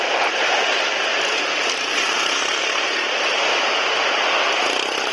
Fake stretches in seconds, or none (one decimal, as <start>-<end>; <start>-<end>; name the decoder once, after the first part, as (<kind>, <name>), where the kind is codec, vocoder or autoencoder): none